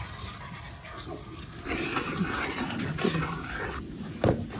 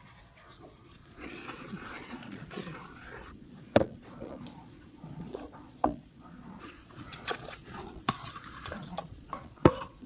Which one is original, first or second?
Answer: first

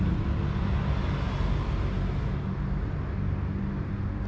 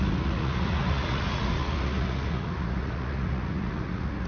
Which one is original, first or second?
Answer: first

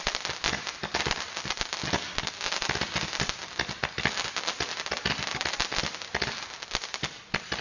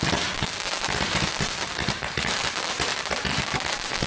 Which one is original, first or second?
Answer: first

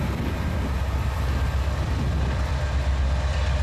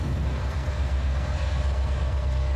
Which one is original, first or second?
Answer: first